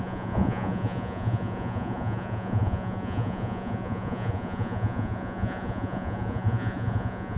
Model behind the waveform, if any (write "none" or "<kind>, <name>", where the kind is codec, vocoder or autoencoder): vocoder, Vocos